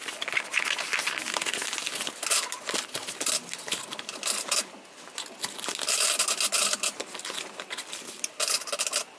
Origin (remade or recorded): recorded